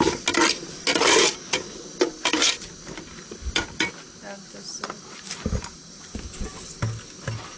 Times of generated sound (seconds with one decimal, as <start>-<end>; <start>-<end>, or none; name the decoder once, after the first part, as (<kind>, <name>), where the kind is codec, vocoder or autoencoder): none